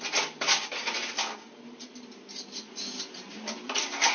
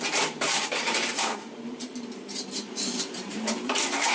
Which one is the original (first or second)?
first